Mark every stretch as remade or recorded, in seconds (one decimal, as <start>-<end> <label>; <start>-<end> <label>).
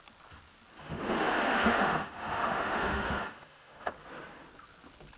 0.0-0.8 recorded; 0.8-3.9 remade; 3.9-5.2 recorded